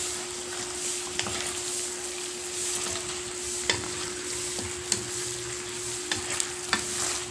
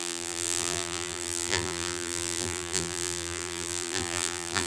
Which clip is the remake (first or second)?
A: second